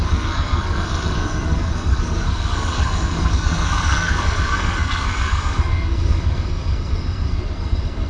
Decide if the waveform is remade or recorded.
remade